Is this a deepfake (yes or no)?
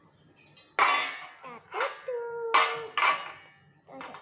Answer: no